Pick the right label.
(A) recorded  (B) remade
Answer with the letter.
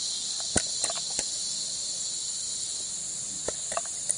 A